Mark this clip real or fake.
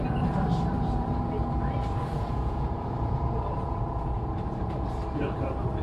fake